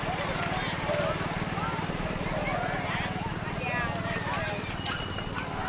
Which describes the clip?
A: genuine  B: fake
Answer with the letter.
A